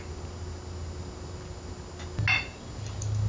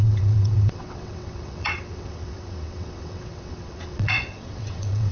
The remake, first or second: second